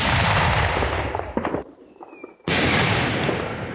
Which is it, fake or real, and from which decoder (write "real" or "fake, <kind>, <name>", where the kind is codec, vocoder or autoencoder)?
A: fake, vocoder, BigVGAN v2